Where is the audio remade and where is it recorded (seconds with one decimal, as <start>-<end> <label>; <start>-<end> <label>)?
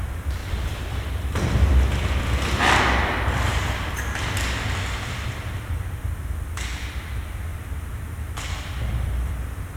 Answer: 0.0-0.4 recorded; 0.4-2.8 remade; 2.8-7.5 recorded; 7.5-9.3 remade; 9.3-9.8 recorded